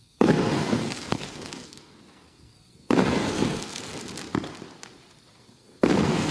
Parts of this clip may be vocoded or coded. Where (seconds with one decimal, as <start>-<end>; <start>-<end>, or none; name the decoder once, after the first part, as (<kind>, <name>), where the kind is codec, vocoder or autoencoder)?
0.0-3.9 (codec, SNAC); 5.3-6.3